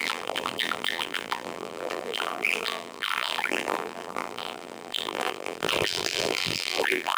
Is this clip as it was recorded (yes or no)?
no